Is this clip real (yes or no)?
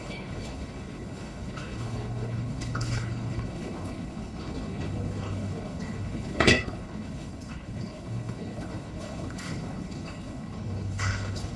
no